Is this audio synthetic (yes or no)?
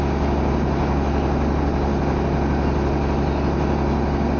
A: no